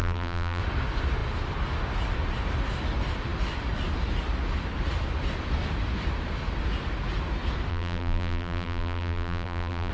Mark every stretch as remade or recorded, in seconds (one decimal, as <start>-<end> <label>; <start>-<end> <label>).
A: 0.0-0.6 remade; 0.6-7.7 recorded; 7.7-9.9 remade

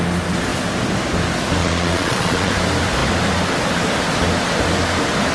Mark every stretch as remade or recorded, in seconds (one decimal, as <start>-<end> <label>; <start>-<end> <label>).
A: 0.0-1.6 recorded; 1.6-2.5 remade; 2.5-5.3 recorded

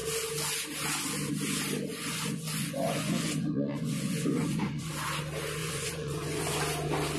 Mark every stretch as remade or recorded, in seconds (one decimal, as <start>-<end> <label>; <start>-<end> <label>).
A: 0.0-1.9 recorded; 1.9-4.9 remade; 4.9-5.6 recorded; 5.6-6.6 remade; 6.6-7.2 recorded

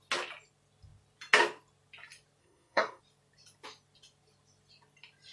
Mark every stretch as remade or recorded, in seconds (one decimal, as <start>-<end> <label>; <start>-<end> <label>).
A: 0.0-2.4 recorded; 2.4-3.0 remade; 3.0-5.3 recorded

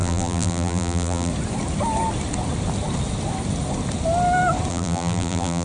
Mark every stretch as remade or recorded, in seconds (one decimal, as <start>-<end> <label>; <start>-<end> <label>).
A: 0.0-1.3 remade; 1.3-4.7 recorded; 4.7-5.6 remade